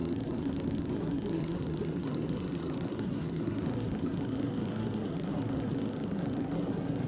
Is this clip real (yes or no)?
no